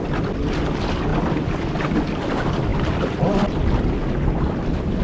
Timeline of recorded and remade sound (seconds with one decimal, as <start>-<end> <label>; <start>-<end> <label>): 0.0-1.1 recorded; 1.1-1.9 remade; 1.9-2.7 recorded; 2.7-5.0 remade